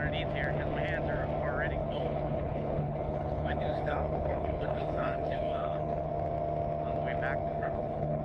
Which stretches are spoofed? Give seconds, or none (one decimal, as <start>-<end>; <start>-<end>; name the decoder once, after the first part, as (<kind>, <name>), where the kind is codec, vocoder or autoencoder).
1.8-6.1 (codec, HILCodec); 7.4-8.2